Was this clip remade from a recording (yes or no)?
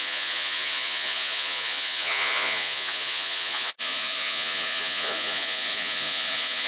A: yes